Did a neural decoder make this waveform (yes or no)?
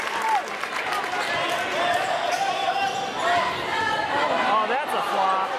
no